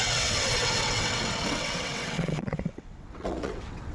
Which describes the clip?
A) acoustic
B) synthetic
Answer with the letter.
B